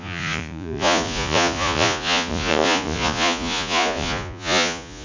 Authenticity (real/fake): fake